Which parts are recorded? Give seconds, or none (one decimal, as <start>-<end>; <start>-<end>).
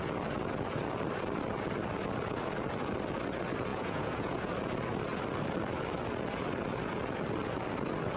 0.0-3.7; 4.5-8.2